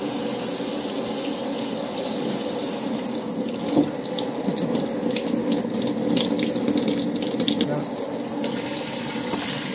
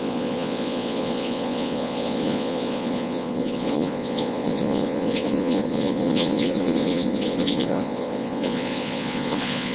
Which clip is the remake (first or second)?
second